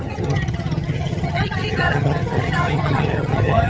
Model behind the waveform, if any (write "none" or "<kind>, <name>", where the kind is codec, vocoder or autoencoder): vocoder, HiFi-GAN